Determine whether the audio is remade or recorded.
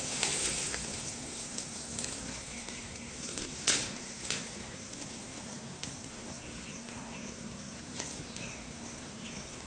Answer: remade